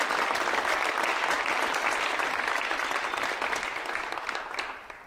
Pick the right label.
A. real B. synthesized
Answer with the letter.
A